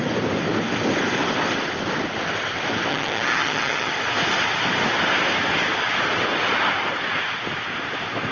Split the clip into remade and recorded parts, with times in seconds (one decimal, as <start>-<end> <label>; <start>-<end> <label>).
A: 0.0-2.9 recorded; 2.9-3.9 remade; 3.9-8.3 recorded